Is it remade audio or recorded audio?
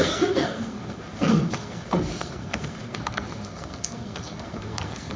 remade